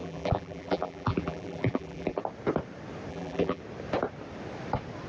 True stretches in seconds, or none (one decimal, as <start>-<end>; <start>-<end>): 2.2-3.1; 3.6-5.1